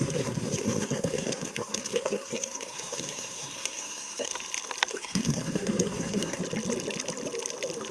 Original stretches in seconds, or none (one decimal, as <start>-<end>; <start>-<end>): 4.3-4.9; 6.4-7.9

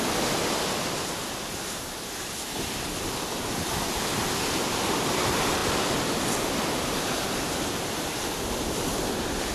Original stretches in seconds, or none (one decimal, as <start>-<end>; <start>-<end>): 0.0-9.5

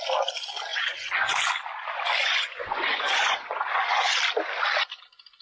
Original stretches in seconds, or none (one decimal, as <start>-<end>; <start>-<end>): 0.0-0.7; 1.3-2.2; 4.2-5.4

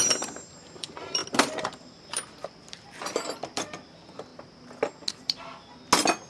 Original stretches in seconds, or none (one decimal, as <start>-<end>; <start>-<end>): 4.3-6.3